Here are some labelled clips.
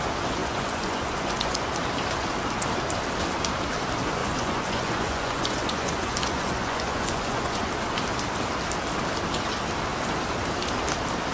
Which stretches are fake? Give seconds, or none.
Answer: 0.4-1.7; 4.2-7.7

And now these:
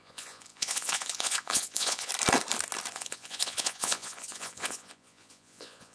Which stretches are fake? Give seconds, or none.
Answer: 0.0-2.1; 2.9-5.9

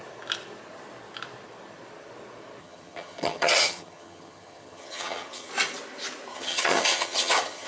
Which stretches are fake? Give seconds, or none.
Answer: 2.6-5.5; 6.3-7.7